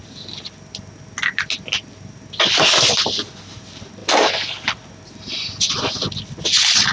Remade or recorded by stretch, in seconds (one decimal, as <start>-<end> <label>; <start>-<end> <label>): 0.0-6.9 recorded

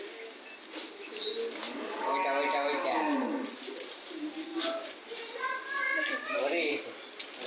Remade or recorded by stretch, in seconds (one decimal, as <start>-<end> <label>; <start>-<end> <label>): 0.0-7.5 recorded